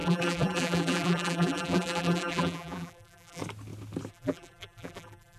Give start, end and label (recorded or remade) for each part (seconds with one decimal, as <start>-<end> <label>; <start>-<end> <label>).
0.0-3.4 remade; 3.4-4.1 recorded; 4.1-5.4 remade